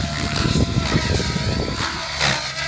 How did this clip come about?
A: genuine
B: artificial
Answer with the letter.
A